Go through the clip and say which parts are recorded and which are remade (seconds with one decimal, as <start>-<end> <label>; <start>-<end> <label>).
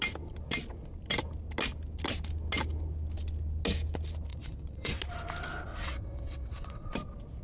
0.0-4.3 recorded; 4.3-5.0 remade; 5.0-5.7 recorded; 5.7-6.9 remade; 6.9-7.4 recorded